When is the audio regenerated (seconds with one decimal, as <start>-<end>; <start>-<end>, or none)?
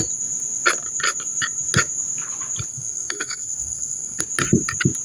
2.7-4.2